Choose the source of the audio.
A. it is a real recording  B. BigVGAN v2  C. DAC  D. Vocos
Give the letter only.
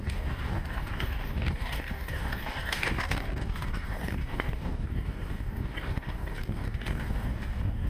C